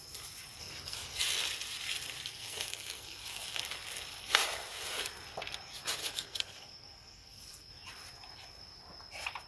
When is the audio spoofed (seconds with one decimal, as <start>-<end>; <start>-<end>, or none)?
0.6-1.2; 2.3-3.6; 6.0-7.7